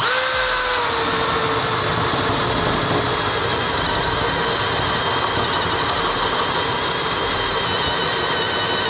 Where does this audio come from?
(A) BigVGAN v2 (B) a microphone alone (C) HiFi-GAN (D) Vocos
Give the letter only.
B